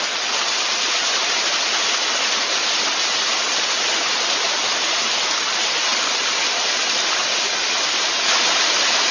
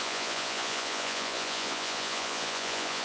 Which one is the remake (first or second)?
second